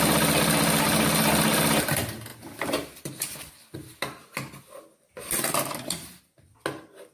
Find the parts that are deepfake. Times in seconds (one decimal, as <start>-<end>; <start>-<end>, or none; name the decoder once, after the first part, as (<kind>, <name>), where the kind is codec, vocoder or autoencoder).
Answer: none